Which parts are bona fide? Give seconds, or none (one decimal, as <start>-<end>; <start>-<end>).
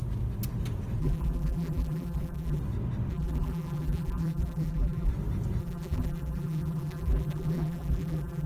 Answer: 0.0-1.0; 2.6-3.1; 5.1-5.6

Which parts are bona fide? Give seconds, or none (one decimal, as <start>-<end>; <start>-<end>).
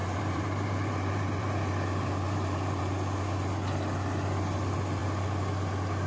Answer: 2.8-6.1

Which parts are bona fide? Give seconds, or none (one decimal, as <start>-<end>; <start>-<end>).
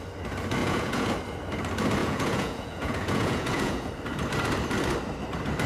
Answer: 0.0-0.6; 1.1-2.0; 3.9-5.7